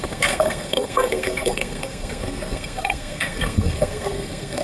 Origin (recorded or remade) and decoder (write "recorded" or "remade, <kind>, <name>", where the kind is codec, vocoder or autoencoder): remade, codec, SNAC